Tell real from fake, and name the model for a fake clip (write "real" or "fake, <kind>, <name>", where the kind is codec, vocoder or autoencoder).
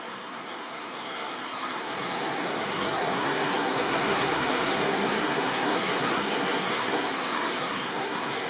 fake, codec, SNAC